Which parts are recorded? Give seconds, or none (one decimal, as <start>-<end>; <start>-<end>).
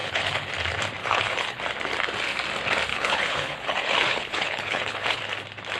0.5-1.0; 1.6-2.9; 5.2-5.8